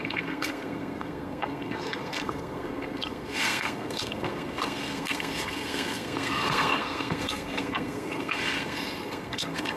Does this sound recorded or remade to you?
remade